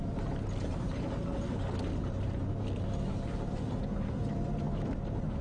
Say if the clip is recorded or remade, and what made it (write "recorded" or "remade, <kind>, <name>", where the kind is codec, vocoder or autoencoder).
recorded